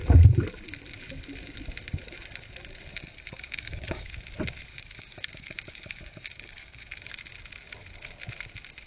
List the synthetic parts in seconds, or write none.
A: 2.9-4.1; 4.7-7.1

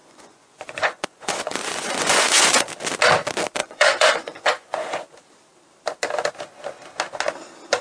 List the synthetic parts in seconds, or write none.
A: 0.0-2.7; 3.6-5.0

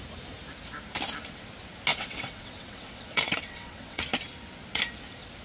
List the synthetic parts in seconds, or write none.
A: 1.9-4.0

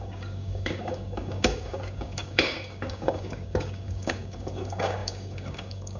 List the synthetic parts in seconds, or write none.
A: 0.0-6.0

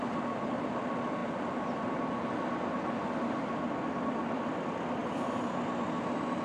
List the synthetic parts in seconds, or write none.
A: none

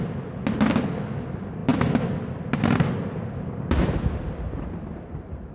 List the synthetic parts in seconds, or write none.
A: none

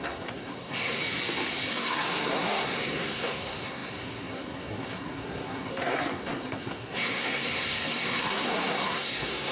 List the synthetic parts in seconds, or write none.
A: 0.0-1.0; 1.7-9.5

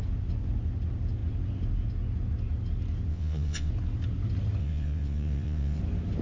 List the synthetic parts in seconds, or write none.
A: 3.1-3.7; 4.6-5.8